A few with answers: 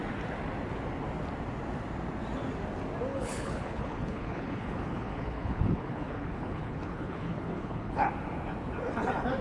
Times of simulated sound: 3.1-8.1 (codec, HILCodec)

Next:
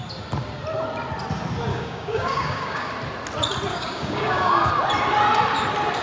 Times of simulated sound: 1.7-2.9 (codec, DAC); 3.7-4.7

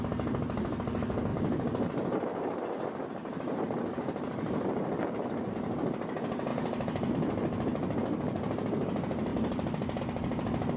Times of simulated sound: 1.3-5.5 (vocoder, BigVGAN v2); 6.5-7.1; 9.3-10.0

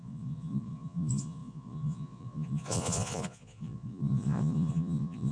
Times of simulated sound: 0.0-5.3 (vocoder, Vocos)

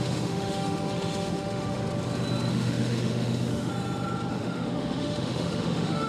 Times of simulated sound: 0.0-1.8 (autoencoder, DAC-VAE); 2.5-3.7; 4.3-6.1